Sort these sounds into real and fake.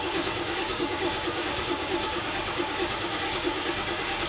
fake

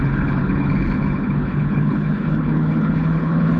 fake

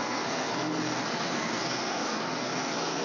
fake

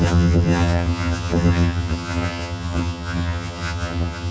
fake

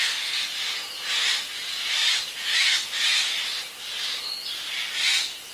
real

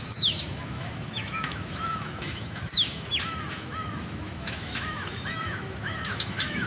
fake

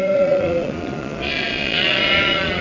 fake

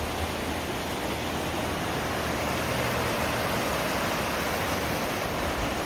real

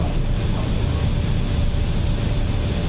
real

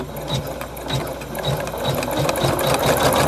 real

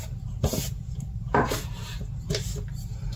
fake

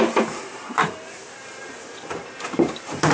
fake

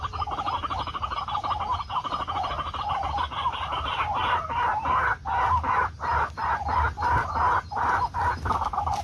real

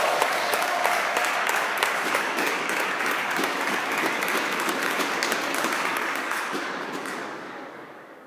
fake